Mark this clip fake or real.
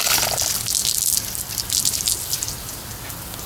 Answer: real